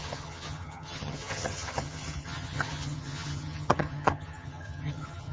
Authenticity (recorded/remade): remade